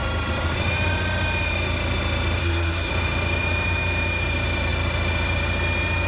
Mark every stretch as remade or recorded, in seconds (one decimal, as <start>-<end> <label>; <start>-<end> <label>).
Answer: 0.0-2.4 recorded; 2.4-2.9 remade; 2.9-6.1 recorded